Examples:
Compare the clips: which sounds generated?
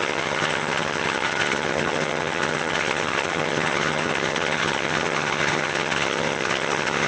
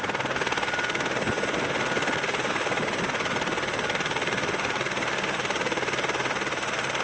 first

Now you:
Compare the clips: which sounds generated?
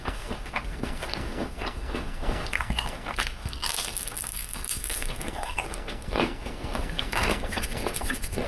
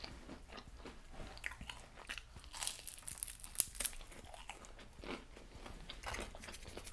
first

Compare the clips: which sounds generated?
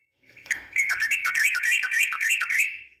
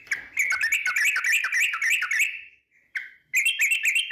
first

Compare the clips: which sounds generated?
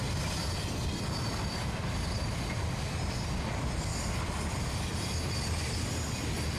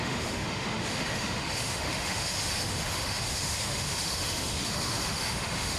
second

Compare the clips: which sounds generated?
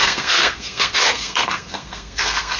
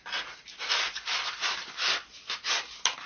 first